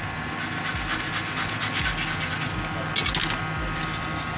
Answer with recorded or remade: recorded